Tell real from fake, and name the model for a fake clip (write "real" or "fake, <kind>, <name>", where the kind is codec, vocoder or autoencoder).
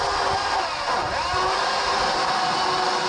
real